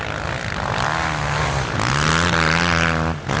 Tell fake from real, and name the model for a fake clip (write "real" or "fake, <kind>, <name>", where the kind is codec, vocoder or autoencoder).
real